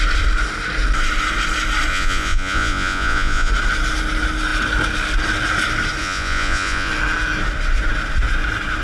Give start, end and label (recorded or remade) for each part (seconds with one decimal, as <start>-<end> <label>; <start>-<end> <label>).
0.0-1.9 recorded; 1.9-3.5 remade; 3.5-6.0 recorded; 6.0-6.9 remade; 6.9-8.8 recorded